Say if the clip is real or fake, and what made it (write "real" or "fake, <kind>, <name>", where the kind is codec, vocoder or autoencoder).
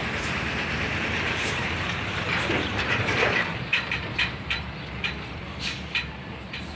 fake, vocoder, BigVGAN v2